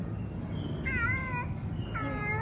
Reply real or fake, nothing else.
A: real